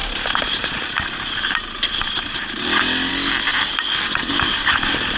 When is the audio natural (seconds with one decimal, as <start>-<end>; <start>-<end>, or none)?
0.0-5.2